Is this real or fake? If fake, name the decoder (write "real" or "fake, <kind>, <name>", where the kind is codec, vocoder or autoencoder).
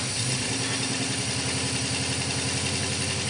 real